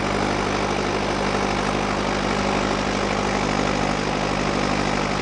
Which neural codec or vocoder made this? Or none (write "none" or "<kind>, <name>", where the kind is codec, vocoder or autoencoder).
none